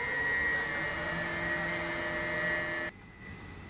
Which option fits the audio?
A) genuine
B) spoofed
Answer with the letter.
A